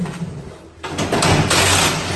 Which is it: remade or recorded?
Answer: recorded